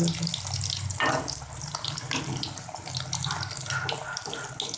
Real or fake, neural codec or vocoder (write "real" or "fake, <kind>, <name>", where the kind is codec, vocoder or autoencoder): real